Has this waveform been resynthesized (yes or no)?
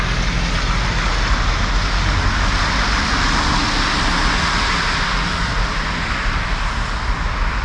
no